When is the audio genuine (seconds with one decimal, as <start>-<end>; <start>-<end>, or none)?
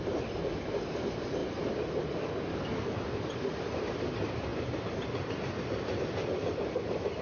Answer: 0.0-2.5; 3.0-7.2